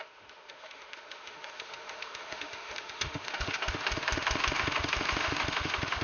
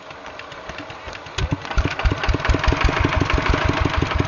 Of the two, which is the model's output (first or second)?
first